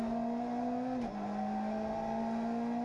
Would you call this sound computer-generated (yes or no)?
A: no